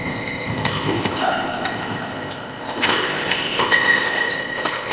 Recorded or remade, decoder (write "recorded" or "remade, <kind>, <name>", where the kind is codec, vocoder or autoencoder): remade, codec, ZipCodec